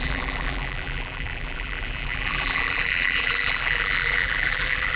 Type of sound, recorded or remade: remade